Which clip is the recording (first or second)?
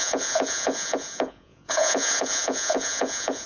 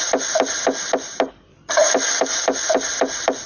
second